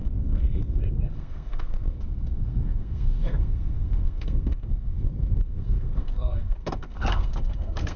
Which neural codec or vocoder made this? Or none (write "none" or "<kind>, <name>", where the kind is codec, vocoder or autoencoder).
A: codec, SNAC